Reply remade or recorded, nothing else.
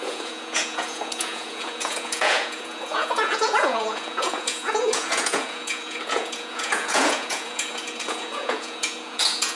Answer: remade